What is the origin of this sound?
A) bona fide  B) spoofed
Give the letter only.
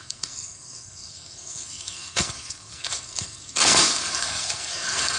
B